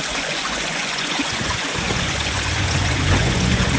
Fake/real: fake